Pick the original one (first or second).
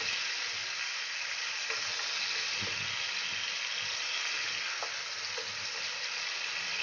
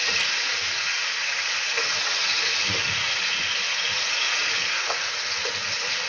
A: first